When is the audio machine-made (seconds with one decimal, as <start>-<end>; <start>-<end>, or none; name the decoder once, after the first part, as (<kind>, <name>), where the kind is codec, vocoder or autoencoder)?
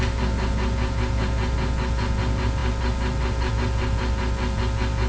none